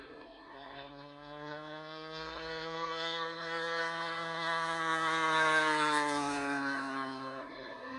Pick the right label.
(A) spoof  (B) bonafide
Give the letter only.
A